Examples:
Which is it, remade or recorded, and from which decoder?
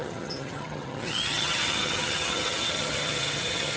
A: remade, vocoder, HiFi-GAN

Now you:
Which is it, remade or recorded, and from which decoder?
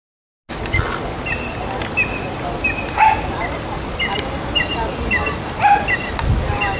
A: recorded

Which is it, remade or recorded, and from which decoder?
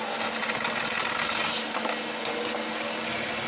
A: recorded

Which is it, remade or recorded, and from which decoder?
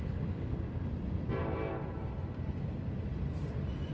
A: recorded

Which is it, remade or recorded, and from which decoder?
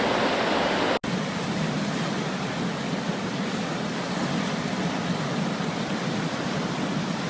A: recorded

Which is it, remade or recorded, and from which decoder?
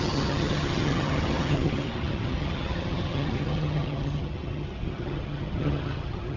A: remade, vocoder, HiFi-GAN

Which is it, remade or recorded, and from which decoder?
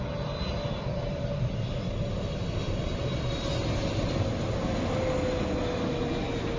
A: recorded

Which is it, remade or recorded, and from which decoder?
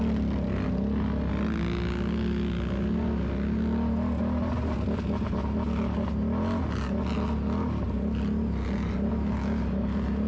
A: recorded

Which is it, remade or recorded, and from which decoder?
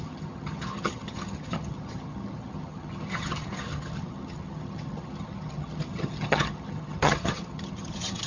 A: remade, vocoder, HiFi-GAN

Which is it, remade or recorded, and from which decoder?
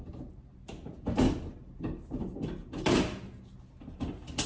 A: recorded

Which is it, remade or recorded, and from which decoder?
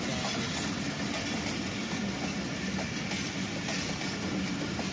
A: recorded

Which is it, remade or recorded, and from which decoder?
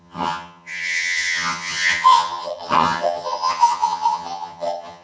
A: remade, vocoder, HiFi-GAN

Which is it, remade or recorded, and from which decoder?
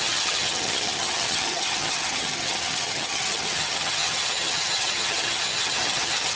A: remade, vocoder, HiFi-GAN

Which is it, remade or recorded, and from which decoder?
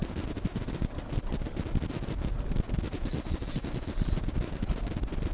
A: recorded